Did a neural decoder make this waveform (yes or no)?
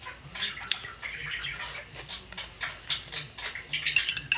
no